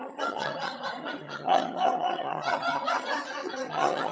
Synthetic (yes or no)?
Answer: yes